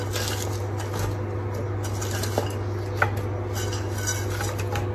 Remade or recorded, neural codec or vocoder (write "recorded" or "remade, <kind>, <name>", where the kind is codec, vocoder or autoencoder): recorded